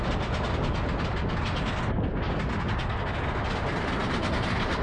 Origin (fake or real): real